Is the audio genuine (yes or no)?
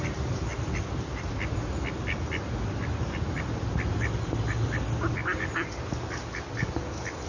yes